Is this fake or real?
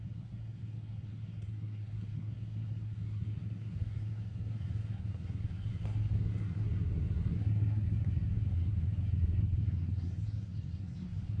fake